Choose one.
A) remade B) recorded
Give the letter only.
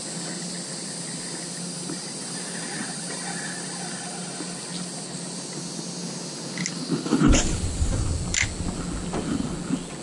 B